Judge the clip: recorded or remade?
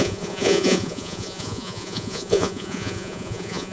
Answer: remade